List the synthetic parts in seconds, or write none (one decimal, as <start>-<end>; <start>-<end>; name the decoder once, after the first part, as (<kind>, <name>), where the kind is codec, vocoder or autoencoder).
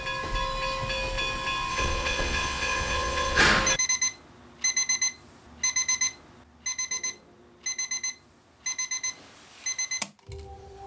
1.7-3.4 (vocoder, Vocos)